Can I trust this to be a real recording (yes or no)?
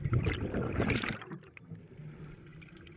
yes